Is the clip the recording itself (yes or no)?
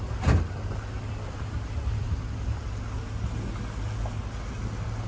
yes